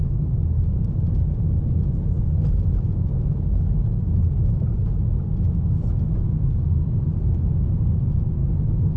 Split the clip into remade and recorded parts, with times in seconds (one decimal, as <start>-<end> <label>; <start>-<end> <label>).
0.0-9.0 recorded